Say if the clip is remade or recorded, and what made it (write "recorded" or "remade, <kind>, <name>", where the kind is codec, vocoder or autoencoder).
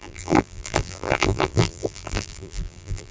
remade, vocoder, BigVGAN v2